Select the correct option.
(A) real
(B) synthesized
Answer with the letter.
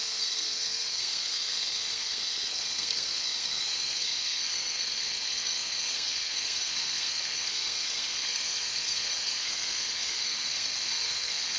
B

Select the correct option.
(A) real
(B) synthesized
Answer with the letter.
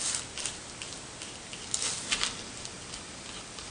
A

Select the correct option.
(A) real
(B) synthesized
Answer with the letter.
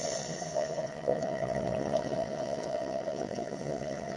B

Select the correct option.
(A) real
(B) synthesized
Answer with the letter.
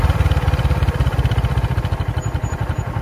A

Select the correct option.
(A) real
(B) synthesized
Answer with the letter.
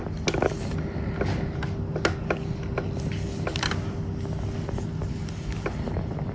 A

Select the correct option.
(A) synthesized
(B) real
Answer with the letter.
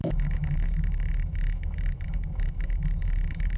A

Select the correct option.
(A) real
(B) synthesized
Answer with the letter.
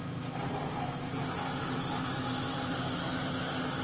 A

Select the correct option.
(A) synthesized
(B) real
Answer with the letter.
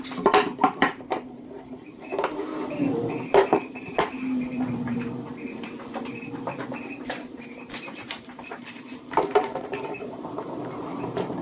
A